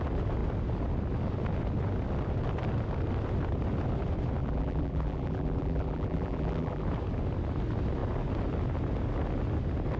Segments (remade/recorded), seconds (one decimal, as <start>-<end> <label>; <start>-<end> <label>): 0.0-4.4 recorded; 4.4-6.8 remade; 6.8-10.0 recorded